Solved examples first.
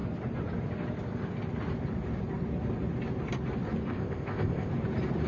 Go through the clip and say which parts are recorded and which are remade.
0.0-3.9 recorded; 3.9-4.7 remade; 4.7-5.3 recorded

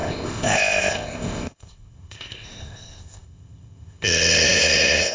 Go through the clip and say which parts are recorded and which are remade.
0.0-5.1 remade

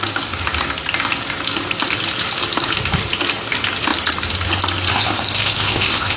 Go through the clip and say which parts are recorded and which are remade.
0.0-4.9 recorded; 4.9-6.2 remade

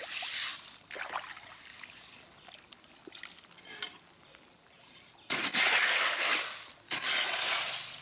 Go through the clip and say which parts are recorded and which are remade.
0.0-8.0 recorded

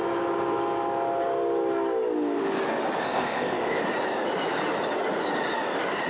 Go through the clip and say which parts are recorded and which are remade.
0.0-3.0 recorded; 3.0-3.8 remade; 3.8-6.1 recorded

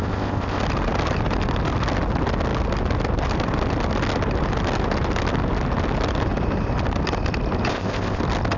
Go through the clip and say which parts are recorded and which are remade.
0.0-0.6 remade; 0.6-7.7 recorded; 7.7-8.2 remade; 8.2-8.6 recorded